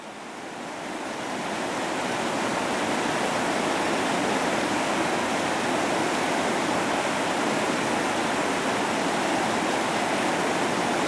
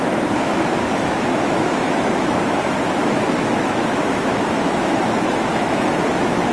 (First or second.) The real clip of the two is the first